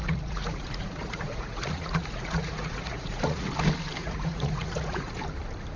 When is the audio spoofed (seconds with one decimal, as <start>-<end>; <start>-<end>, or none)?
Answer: 0.0-3.5; 4.0-5.2